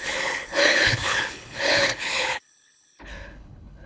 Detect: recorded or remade remade